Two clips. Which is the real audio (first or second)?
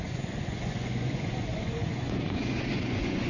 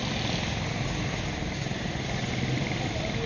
second